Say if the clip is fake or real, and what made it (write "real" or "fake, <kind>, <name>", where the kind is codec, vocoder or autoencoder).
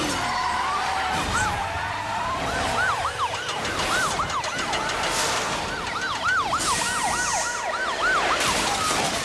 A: real